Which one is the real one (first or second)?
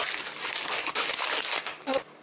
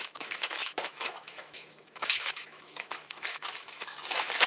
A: first